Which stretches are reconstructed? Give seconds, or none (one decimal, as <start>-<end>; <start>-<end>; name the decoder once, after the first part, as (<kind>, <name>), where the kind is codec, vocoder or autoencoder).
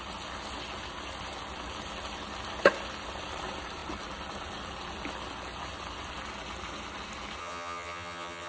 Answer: 7.4-8.5 (vocoder, HiFi-GAN)